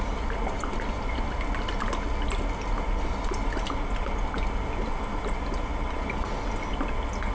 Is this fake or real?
real